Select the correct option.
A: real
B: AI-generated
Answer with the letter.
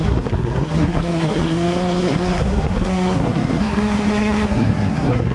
B